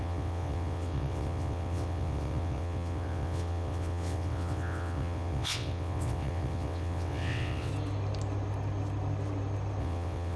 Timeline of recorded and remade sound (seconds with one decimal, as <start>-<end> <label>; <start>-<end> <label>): 0.0-7.7 remade; 7.7-9.8 recorded; 9.8-10.4 remade